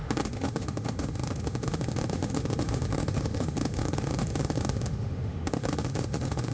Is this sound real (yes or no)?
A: no